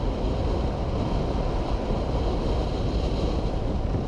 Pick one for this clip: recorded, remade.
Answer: recorded